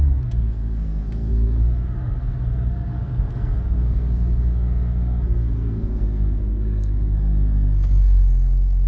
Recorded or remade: remade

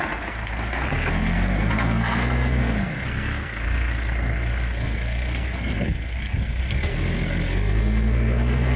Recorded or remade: remade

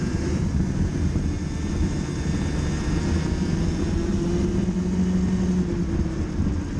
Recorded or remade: recorded